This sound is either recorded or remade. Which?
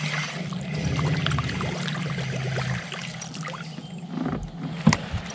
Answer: recorded